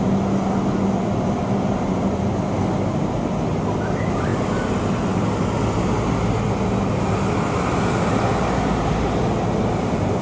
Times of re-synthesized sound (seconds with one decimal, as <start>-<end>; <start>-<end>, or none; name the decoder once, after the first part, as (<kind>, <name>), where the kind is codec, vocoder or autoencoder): none